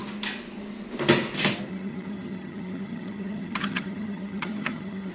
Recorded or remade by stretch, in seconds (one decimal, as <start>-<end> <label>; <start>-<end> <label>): 0.0-1.7 recorded; 1.7-5.1 remade